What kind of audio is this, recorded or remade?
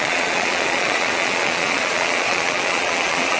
remade